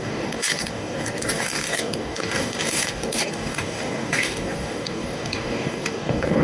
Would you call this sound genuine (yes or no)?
no